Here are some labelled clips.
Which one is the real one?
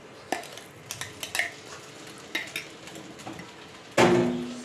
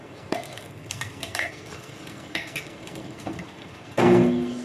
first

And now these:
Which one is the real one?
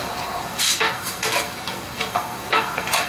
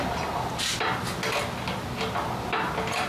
second